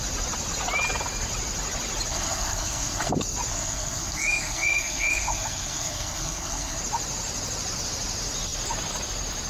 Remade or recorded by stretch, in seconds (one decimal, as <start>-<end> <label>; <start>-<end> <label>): 0.0-2.1 recorded; 2.1-3.1 remade; 3.1-3.5 recorded; 3.5-6.8 remade; 6.8-9.5 recorded

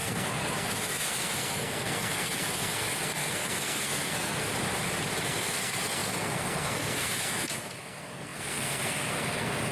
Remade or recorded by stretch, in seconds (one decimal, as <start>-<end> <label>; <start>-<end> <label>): 0.0-4.5 remade; 4.5-5.2 recorded; 5.2-9.7 remade

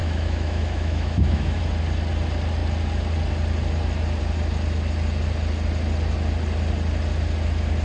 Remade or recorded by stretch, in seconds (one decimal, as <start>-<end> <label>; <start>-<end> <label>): 0.0-1.6 remade; 1.6-7.8 recorded

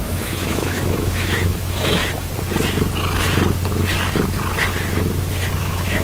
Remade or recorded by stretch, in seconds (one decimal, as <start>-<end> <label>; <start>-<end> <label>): 0.0-2.0 remade; 2.0-5.6 recorded; 5.6-6.0 remade

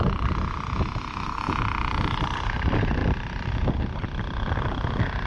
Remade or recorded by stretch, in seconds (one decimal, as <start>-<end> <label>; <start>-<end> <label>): 0.0-3.0 recorded; 3.0-3.7 remade; 3.7-5.3 recorded